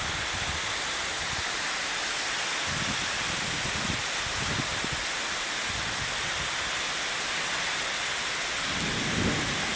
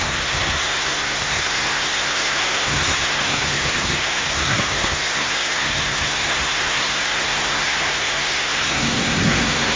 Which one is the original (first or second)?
first